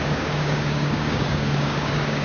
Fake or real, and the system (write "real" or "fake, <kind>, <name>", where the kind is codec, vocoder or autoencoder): fake, codec, DAC